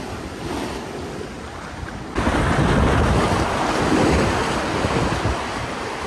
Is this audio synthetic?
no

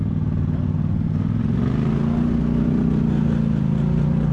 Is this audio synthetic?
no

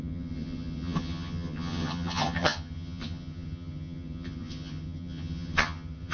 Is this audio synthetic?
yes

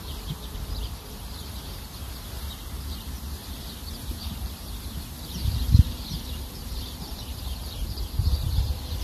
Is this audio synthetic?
yes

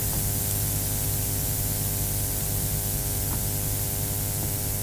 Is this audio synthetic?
no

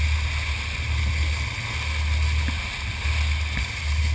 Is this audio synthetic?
no